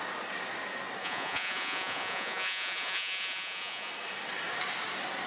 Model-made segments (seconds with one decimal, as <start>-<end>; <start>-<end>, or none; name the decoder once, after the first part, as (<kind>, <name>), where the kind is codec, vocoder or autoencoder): 1.0-3.9 (vocoder, Vocos)